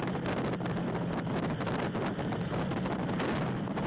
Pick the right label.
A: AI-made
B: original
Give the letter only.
B